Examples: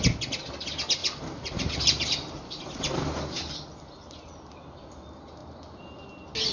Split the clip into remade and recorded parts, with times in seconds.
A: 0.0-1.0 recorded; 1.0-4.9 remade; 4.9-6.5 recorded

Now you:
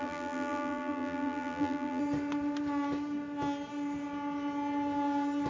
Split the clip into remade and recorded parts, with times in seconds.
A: 0.0-2.0 remade; 2.0-5.5 recorded

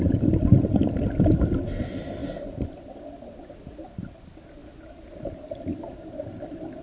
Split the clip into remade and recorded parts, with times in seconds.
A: 0.0-2.2 recorded; 2.2-3.5 remade; 3.5-6.8 recorded